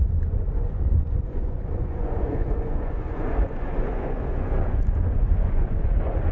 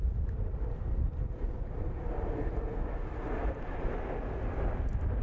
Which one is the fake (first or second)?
first